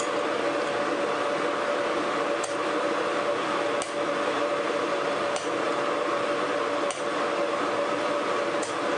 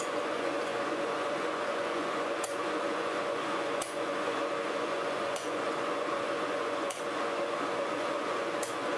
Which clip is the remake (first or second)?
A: second